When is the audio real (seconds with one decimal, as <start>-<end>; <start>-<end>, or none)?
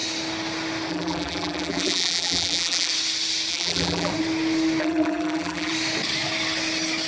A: 0.0-0.9; 2.9-3.5; 4.1-4.8; 5.7-7.1